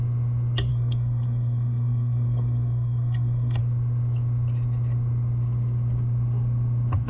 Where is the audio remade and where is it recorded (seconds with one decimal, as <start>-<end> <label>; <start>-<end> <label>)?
0.0-0.7 recorded; 0.7-3.6 remade; 3.6-7.1 recorded